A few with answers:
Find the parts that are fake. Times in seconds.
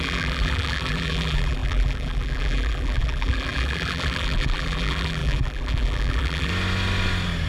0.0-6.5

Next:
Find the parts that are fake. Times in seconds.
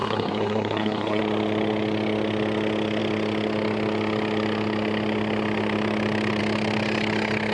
0.0-1.2